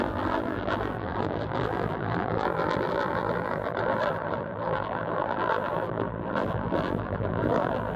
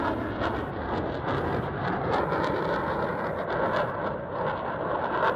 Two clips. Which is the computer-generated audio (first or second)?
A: first